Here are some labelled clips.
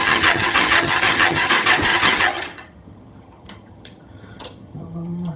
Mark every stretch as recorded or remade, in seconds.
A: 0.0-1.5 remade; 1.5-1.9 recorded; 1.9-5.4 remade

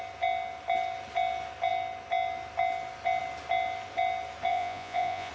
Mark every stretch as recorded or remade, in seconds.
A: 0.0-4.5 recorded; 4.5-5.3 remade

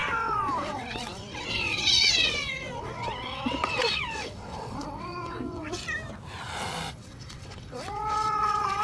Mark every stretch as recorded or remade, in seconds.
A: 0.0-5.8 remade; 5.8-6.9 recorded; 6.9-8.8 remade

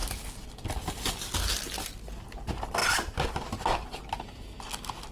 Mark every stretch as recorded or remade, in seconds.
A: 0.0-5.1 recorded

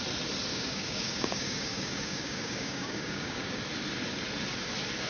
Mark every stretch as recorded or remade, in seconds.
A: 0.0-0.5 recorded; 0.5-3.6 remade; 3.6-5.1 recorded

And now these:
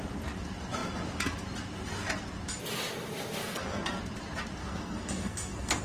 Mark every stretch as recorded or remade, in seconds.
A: 0.0-3.4 recorded; 3.4-4.0 remade; 4.0-4.6 recorded; 4.6-5.8 remade